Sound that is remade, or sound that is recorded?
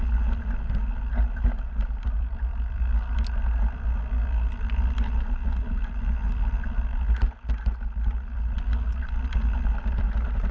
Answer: recorded